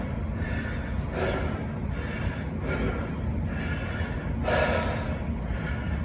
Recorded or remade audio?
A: recorded